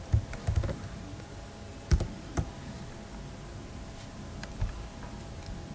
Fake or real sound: real